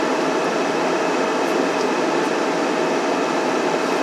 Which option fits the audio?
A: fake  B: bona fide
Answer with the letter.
B